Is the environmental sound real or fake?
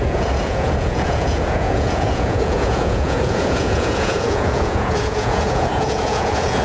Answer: fake